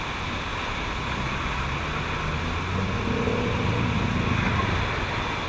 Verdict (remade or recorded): recorded